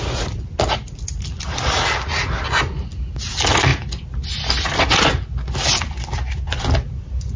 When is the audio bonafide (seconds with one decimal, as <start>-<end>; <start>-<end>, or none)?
0.0-7.4